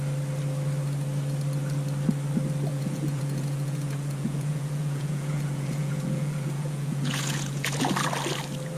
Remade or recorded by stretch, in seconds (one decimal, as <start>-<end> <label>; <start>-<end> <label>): 0.0-2.7 recorded; 2.7-7.8 remade; 7.8-8.8 recorded